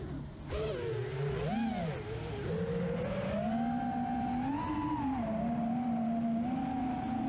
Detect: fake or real real